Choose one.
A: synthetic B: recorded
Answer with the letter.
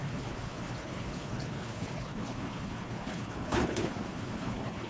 A